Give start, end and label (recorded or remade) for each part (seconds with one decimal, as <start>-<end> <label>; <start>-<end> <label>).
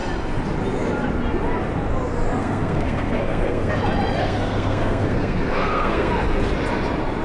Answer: 0.0-2.4 recorded; 2.4-3.7 remade; 3.7-4.2 recorded; 4.2-6.1 remade; 6.1-7.2 recorded